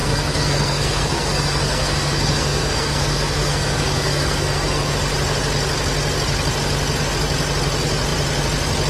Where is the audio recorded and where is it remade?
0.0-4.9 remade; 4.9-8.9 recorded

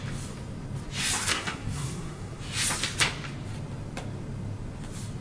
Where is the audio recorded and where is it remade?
0.0-1.3 recorded; 1.3-2.4 remade; 2.4-5.2 recorded